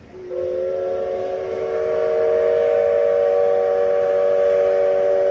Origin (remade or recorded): recorded